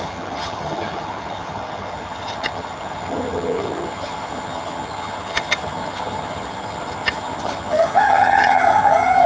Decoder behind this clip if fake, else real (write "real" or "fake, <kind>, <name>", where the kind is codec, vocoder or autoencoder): fake, vocoder, HiFi-GAN